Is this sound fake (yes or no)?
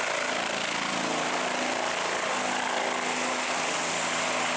no